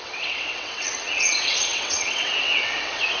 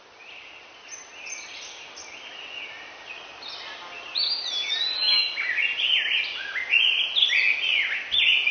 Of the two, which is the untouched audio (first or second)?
second